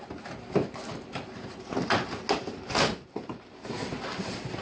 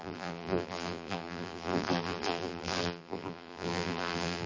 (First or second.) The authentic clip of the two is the first